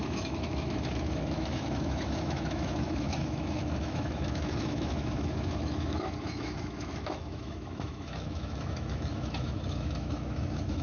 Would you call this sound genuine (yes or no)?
no